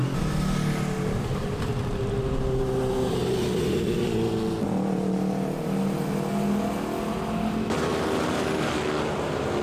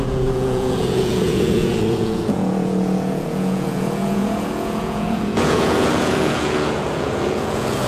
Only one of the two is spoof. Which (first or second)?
second